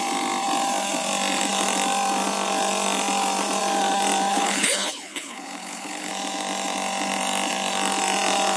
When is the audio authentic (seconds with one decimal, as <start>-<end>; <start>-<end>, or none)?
0.0-4.3; 6.1-8.6